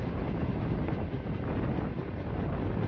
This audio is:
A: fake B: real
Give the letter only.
B